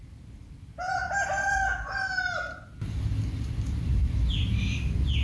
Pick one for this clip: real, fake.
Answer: real